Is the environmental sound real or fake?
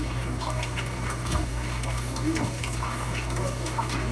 fake